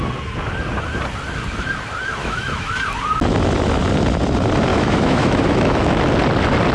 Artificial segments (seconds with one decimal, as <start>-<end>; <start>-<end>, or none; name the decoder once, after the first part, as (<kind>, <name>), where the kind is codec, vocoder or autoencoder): 2.2-2.7 (autoencoder, DAC-VAE); 4.7-6.0